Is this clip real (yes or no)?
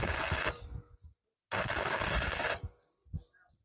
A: yes